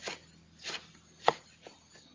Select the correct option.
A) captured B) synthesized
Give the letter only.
A